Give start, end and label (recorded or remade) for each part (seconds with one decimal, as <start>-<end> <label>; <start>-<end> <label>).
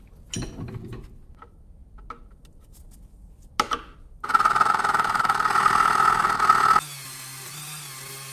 0.0-8.3 recorded